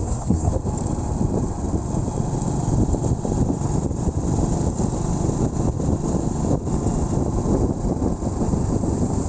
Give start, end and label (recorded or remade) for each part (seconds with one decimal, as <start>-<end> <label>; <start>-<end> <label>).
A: 0.0-0.5 remade; 0.5-9.3 recorded